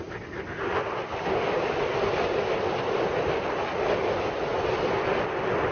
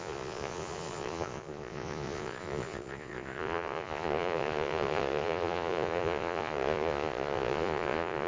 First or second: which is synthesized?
second